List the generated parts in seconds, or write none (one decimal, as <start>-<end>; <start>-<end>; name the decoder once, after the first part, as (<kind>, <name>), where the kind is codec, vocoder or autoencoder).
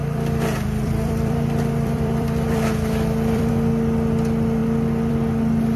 0.0-3.5 (vocoder, BigVGAN v2)